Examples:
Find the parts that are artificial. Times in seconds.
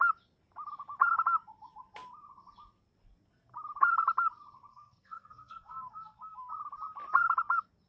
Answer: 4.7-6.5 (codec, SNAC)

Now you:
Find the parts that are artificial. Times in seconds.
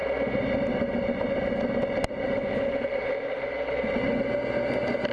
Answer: none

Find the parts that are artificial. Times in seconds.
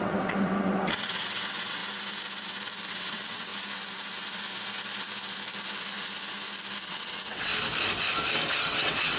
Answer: 0.0-1.8 (vocoder, WaveNeXt); 2.9-3.5; 6.9-7.5; 8.5-9.2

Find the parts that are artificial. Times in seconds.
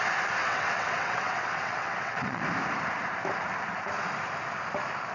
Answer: 0.4-2.4 (vocoder, WaveNeXt)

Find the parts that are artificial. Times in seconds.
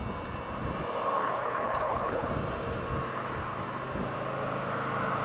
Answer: 1.2-2.3 (codec, HILCodec)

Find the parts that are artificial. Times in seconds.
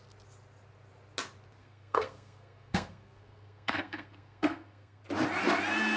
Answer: 1.6-5.0 (codec, SNAC)